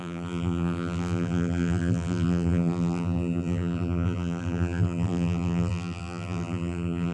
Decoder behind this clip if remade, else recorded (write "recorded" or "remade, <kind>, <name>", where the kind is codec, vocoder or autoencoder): remade, vocoder, BigVGAN v2